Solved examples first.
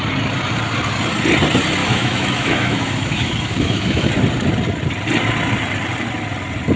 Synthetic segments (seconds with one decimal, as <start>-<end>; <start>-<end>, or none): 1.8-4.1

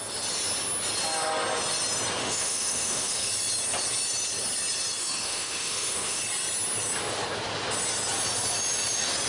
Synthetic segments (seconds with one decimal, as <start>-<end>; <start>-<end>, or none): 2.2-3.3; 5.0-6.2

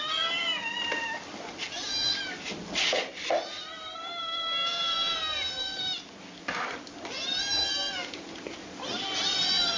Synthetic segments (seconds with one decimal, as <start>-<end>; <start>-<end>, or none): none

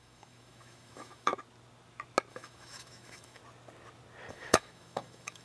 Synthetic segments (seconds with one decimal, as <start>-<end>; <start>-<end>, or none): 0.0-1.3; 2.3-3.4; 4.3-5.4

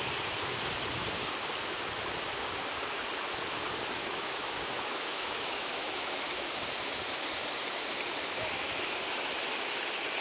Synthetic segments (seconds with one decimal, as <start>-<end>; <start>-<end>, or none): 4.0-6.1